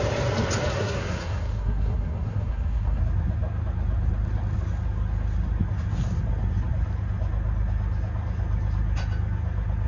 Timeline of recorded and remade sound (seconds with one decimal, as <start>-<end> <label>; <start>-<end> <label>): 0.0-0.7 recorded; 0.7-3.0 remade; 3.0-9.9 recorded